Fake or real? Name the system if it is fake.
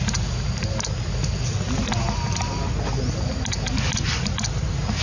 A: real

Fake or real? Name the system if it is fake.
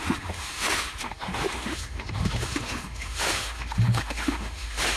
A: fake, autoencoder, DAC-VAE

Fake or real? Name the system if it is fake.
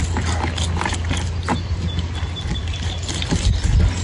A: real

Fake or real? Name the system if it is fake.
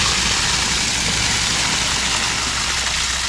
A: real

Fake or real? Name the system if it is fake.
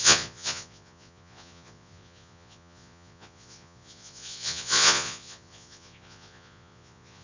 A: fake, vocoder, Vocos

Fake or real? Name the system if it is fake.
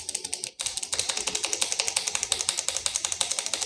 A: real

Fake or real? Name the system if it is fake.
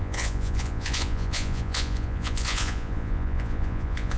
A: fake, vocoder, Vocos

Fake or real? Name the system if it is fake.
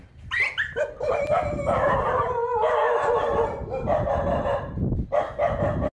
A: real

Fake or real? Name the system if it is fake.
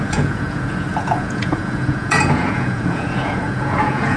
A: fake, vocoder, Vocos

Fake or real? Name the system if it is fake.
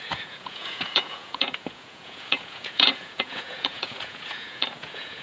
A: fake, vocoder, Vocos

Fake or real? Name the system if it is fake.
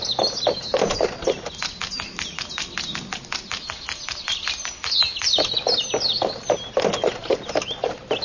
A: real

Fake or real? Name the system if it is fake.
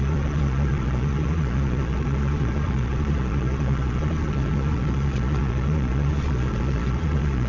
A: fake, vocoder, Vocos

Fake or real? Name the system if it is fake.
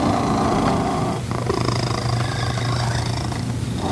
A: real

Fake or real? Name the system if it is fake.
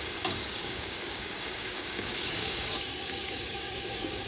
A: fake, codec, DAC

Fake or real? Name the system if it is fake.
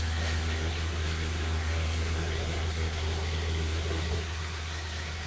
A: fake, codec, SNAC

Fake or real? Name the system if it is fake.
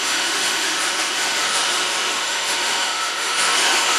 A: fake, autoencoder, DAC-VAE